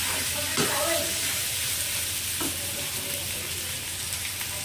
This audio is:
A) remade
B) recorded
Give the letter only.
B